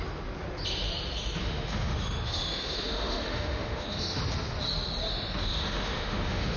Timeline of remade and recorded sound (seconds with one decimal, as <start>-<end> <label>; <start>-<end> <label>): 0.0-1.4 recorded; 1.4-4.2 remade; 4.2-5.1 recorded; 5.1-6.6 remade